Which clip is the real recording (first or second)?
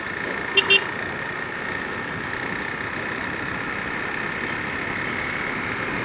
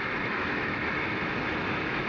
first